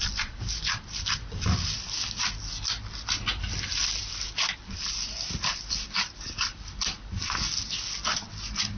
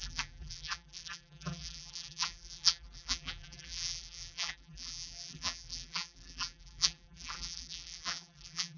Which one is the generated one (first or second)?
second